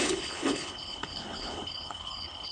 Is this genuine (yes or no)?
no